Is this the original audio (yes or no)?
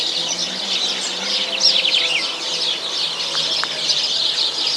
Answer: yes